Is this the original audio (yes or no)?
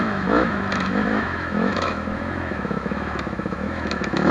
no